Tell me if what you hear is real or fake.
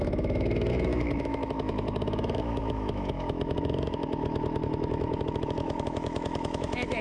fake